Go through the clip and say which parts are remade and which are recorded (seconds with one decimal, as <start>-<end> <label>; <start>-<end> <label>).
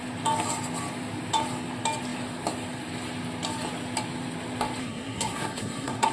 0.0-4.8 recorded; 4.8-6.1 remade